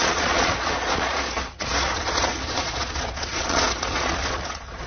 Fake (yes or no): yes